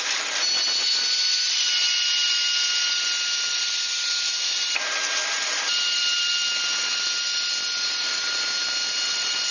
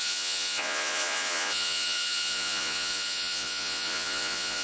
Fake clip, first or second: second